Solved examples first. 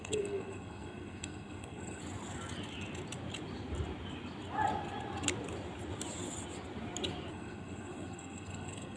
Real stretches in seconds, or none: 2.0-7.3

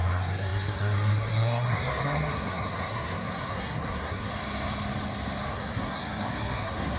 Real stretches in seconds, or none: 4.3-5.5

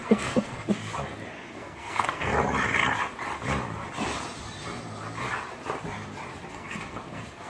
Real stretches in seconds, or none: 0.7-1.5; 2.3-6.5

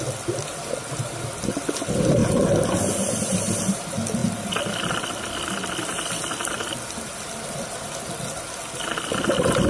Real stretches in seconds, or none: 0.0-9.7

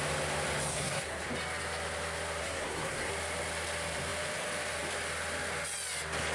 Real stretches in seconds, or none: 0.0-0.7; 1.3-2.4; 3.1-6.3

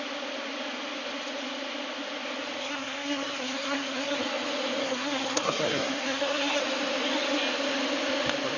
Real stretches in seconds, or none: 0.0-2.6; 4.2-4.8; 6.6-8.6

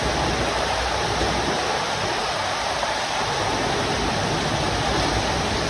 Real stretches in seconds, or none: 0.0-5.7

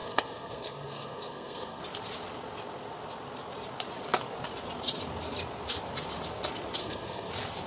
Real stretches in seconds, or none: 1.8-6.8; 7.3-7.7